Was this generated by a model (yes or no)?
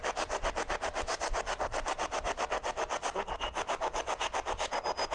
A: no